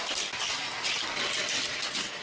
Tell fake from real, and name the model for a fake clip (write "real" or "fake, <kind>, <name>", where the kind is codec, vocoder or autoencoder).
real